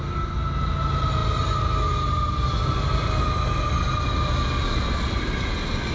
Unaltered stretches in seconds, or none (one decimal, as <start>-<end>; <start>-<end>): 0.0-5.9